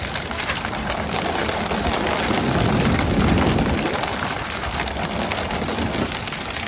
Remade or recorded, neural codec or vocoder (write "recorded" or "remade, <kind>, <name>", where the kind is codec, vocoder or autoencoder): recorded